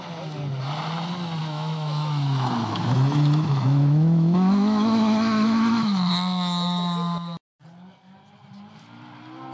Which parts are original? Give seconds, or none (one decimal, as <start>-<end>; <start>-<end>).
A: 0.0-1.4; 6.1-9.5